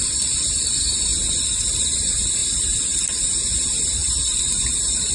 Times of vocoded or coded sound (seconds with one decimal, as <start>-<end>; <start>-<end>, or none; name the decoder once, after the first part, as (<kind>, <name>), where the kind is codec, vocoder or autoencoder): 0.0-5.1 (vocoder, BigVGAN v2)